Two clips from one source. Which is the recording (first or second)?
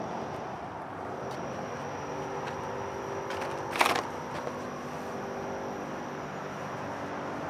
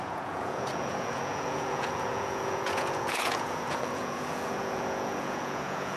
first